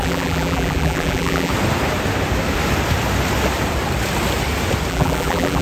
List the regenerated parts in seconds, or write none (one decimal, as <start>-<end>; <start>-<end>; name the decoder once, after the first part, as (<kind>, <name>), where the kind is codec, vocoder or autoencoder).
0.0-1.5 (vocoder, BigVGAN v2); 4.9-5.6